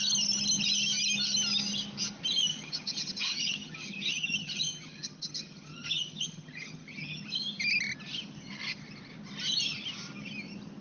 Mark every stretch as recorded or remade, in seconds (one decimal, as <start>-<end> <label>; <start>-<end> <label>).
0.0-2.5 recorded; 2.5-7.2 remade; 7.2-10.8 recorded